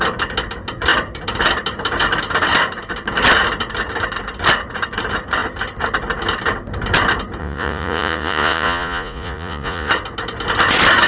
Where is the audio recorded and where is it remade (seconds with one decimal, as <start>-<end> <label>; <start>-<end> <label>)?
0.0-7.4 recorded; 7.4-9.9 remade; 9.9-11.1 recorded